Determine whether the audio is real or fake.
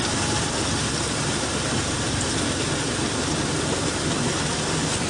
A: real